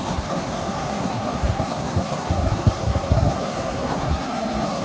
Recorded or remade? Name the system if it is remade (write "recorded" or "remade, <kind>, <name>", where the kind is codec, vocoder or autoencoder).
remade, codec, SNAC